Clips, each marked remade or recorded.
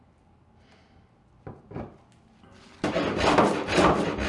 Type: recorded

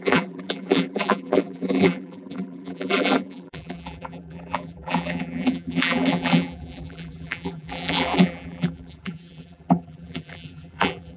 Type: remade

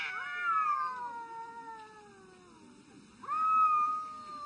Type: recorded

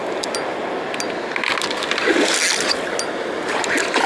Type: recorded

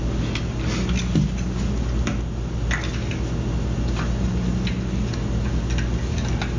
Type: recorded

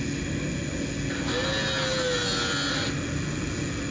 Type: recorded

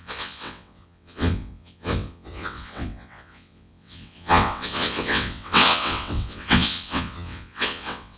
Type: remade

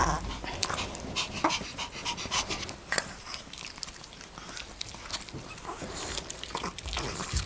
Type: recorded